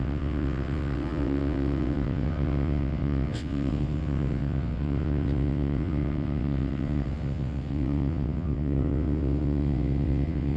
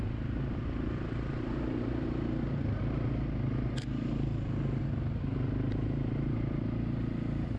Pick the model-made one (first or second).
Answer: first